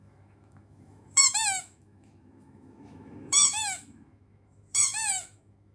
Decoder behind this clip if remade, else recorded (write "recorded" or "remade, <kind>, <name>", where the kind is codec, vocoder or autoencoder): remade, autoencoder, DAC-VAE